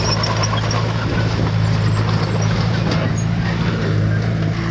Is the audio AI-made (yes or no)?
no